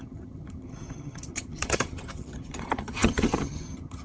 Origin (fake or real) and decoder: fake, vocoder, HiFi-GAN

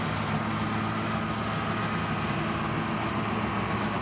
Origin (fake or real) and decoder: real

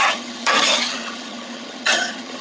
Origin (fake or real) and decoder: fake, vocoder, HiFi-GAN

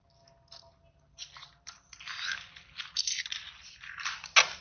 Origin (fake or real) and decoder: real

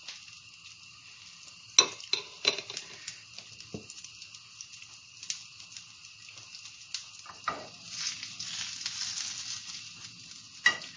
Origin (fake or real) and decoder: real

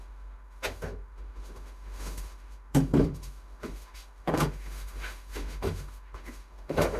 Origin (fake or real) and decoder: fake, autoencoder, DAC-VAE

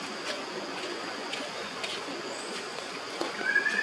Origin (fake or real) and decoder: fake, vocoder, Vocos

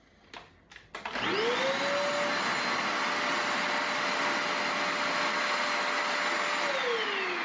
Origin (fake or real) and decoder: real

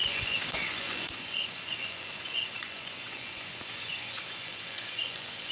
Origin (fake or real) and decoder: fake, vocoder, Vocos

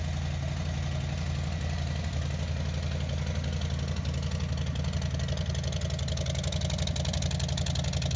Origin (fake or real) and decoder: real